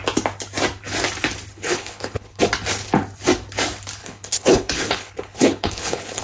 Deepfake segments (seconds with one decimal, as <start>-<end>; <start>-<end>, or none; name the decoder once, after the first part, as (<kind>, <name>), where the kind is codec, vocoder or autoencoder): 1.5-2.4 (codec, HILCodec); 4.0-6.2